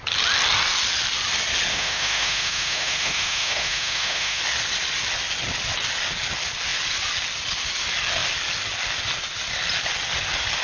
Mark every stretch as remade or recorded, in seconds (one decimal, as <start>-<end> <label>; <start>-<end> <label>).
0.0-1.7 recorded; 1.7-4.4 remade; 4.4-10.6 recorded